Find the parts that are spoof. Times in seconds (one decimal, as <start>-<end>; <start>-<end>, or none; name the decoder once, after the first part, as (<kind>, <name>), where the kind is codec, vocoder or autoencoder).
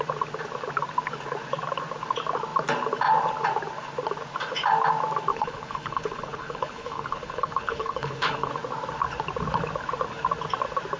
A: 5.3-8.5 (codec, HILCodec)